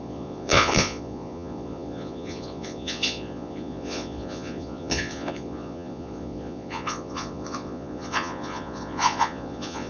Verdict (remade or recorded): remade